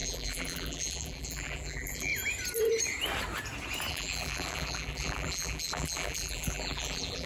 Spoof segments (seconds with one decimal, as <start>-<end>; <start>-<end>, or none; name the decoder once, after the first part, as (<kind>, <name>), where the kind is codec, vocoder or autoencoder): 0.0-2.1 (vocoder, BigVGAN v2); 3.9-7.3